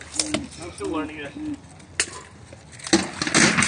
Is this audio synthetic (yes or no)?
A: no